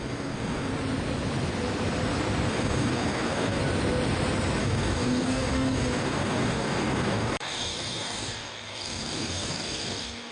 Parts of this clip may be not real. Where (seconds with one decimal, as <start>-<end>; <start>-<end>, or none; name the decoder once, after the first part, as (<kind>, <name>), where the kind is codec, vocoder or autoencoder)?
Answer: 0.0-0.7 (codec, DAC); 2.5-3.6; 4.6-10.3